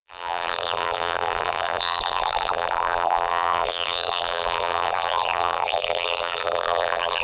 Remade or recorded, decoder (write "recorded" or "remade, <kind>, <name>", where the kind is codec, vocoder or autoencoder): remade, vocoder, BigVGAN v2